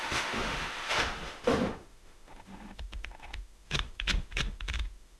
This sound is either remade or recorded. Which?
remade